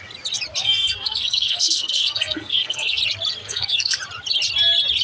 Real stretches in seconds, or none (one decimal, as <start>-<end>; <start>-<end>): 0.0-0.6; 3.0-3.4; 4.0-5.0